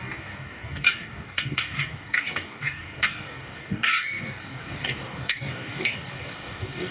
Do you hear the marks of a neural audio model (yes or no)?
yes